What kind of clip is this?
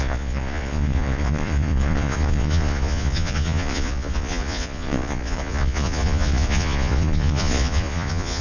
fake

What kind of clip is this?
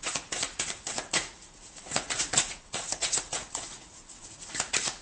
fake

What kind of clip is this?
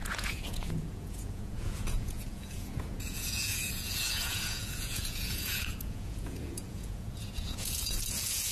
fake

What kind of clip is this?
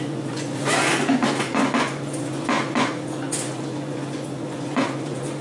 fake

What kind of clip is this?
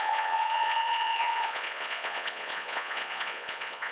fake